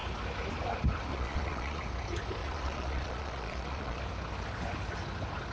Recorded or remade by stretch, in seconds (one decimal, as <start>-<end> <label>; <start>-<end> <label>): 0.0-1.1 recorded; 1.1-1.8 remade; 1.8-2.4 recorded; 2.4-4.0 remade; 4.0-5.5 recorded